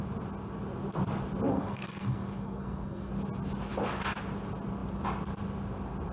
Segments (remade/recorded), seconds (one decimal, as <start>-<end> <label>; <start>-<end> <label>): 0.0-1.5 recorded; 1.5-3.1 remade; 3.1-6.1 recorded